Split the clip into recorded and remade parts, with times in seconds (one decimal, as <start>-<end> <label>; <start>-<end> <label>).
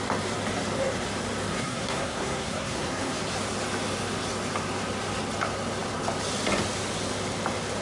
0.0-1.5 recorded; 1.5-3.2 remade; 3.2-7.8 recorded